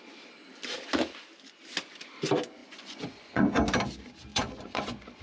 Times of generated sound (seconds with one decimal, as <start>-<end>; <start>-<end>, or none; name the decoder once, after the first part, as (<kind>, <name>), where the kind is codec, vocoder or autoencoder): 2.6-3.5 (vocoder, Vocos); 4.3-5.2